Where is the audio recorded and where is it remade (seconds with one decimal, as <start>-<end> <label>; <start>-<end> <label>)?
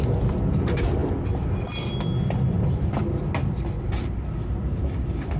0.0-5.4 recorded